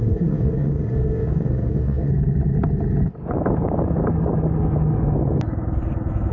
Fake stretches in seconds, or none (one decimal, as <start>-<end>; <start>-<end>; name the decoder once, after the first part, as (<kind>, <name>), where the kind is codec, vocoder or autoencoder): 0.0-2.1 (codec, SNAC)